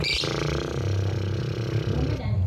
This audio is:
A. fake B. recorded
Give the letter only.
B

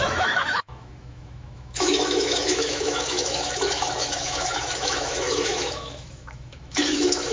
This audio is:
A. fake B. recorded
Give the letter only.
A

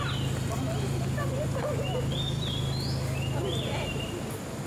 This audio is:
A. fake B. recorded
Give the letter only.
B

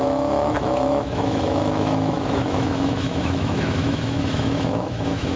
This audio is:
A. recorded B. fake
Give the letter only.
B